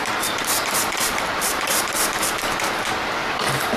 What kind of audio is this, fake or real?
fake